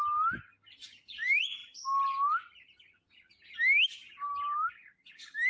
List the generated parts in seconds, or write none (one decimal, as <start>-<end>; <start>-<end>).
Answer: none